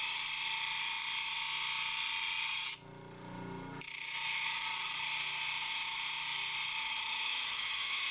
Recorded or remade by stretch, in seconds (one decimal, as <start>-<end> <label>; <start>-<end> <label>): 0.0-6.8 recorded; 6.8-8.1 remade